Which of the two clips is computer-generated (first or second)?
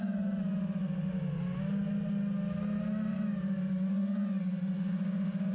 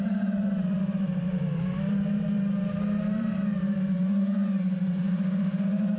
second